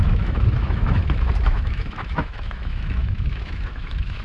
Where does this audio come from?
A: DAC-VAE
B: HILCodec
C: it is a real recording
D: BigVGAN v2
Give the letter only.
A